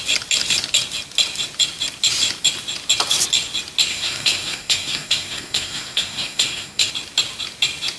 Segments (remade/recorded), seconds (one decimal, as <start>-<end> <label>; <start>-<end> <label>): 0.0-3.9 recorded; 3.9-6.9 remade; 6.9-8.0 recorded